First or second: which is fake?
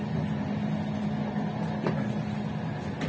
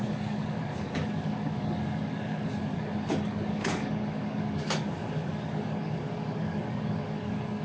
second